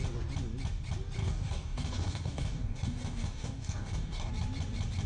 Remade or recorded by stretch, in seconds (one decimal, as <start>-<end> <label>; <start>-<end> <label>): 0.0-1.2 recorded; 1.2-4.3 remade; 4.3-5.1 recorded